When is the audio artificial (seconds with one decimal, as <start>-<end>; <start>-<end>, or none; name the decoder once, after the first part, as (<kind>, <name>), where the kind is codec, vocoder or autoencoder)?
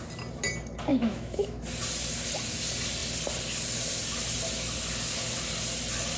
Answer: 0.9-1.6 (autoencoder, DAC-VAE)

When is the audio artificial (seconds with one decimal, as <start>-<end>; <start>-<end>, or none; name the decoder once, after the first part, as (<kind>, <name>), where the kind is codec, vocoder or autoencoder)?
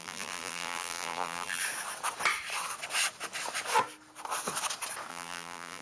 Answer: 0.0-1.6 (vocoder, BigVGAN v2); 5.1-5.8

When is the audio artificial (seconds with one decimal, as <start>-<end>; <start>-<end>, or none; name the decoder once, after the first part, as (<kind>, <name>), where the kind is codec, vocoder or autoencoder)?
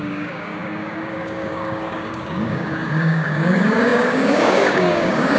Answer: 0.0-5.4 (codec, DAC)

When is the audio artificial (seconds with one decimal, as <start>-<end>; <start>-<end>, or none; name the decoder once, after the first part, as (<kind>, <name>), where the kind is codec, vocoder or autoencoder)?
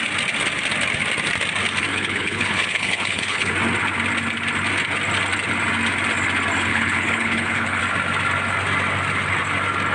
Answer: 1.9-3.5 (codec, HILCodec); 6.7-7.8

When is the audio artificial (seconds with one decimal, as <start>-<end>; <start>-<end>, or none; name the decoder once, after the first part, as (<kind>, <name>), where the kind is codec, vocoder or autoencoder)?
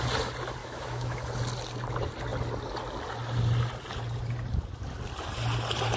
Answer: 0.6-1.2 (autoencoder, DAC-VAE)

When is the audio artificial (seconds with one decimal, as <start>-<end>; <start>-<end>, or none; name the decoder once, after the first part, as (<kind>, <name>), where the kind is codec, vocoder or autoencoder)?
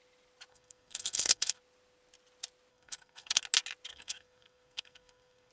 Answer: 0.5-1.6 (codec, SNAC); 2.7-3.4; 3.9-5.5